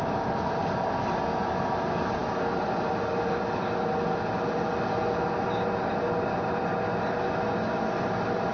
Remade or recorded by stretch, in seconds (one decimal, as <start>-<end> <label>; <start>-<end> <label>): 0.0-8.5 recorded